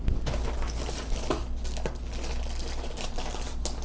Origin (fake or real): real